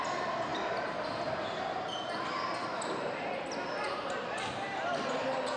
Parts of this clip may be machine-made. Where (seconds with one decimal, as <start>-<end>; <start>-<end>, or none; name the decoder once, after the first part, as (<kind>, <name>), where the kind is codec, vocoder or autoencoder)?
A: none